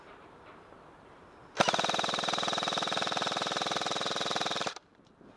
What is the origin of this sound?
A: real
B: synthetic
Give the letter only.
B